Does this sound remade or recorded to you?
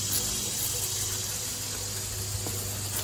recorded